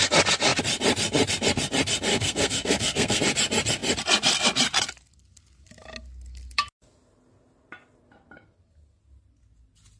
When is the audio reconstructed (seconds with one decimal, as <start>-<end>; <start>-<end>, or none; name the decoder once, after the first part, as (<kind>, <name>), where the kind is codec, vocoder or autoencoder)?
2.1-3.2 (codec, SNAC)